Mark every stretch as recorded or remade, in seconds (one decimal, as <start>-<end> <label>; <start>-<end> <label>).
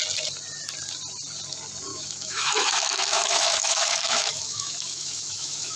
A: 0.0-1.9 recorded; 1.9-5.8 remade